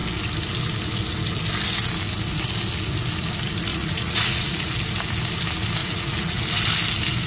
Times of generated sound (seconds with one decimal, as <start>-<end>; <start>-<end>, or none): 3.7-4.7; 5.8-6.4